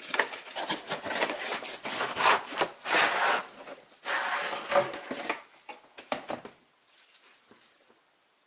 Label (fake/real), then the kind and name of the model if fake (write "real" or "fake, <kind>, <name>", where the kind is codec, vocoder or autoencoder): real